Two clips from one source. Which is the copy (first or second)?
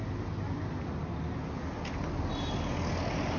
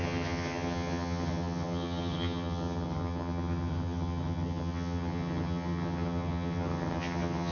second